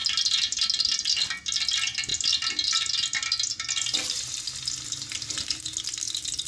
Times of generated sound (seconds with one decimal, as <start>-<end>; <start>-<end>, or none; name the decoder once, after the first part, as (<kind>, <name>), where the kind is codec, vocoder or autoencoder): none

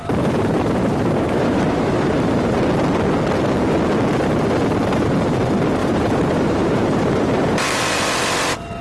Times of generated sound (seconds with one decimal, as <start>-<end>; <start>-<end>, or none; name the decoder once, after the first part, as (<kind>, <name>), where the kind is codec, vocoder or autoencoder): 0.0-2.6 (vocoder, BigVGAN v2); 5.8-8.2

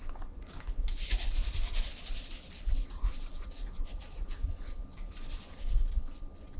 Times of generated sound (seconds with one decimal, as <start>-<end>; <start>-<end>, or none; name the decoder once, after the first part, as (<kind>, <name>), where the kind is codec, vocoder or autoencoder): none

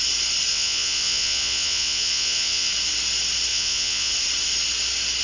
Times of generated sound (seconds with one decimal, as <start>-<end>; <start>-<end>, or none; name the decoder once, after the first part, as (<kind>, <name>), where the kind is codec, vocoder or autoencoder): 0.5-2.7 (vocoder, Vocos); 3.5-4.1

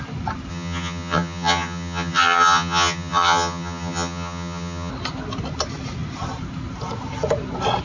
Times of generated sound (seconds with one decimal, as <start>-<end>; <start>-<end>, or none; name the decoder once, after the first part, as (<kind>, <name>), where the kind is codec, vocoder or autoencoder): 0.5-4.9 (vocoder, HiFi-GAN)

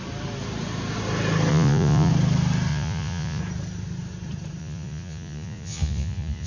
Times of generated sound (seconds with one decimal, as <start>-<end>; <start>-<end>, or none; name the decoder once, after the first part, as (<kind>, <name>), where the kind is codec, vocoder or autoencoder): 1.5-2.1 (vocoder, Vocos); 2.7-3.4; 4.6-6.5

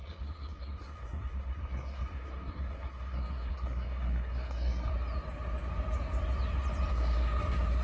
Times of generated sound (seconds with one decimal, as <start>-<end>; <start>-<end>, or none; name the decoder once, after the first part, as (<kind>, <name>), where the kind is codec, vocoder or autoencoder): 0.0-4.9 (codec, SNAC); 6.9-7.8

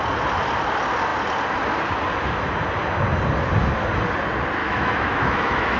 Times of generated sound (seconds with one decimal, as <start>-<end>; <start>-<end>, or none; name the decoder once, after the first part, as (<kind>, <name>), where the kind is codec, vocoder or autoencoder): 4.6-5.8 (autoencoder, DAC-VAE)